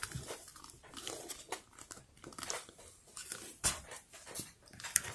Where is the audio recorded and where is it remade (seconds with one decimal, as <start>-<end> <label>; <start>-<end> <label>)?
0.0-0.5 remade; 0.5-2.0 recorded; 2.0-5.1 remade